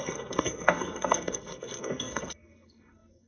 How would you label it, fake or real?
fake